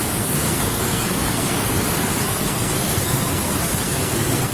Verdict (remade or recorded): remade